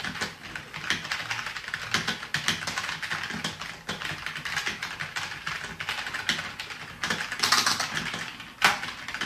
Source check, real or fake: real